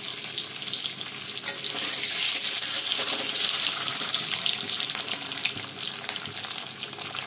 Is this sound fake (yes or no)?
no